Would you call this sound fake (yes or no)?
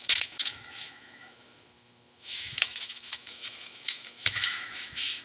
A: yes